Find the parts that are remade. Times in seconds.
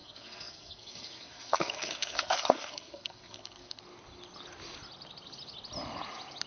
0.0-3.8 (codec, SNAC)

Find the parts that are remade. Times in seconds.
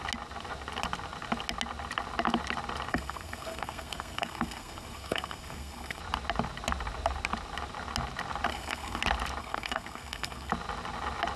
2.9-6.0 (codec, SNAC); 8.5-9.0; 9.4-10.5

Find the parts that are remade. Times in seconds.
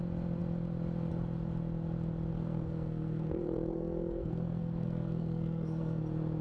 2.3-6.0 (codec, SNAC)